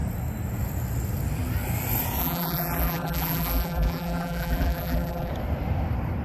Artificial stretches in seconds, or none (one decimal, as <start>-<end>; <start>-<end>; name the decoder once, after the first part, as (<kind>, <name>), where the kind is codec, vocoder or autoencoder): 2.2-5.3 (vocoder, BigVGAN v2)